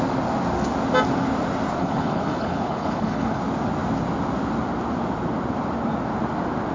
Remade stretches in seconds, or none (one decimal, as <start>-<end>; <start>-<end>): 1.8-3.4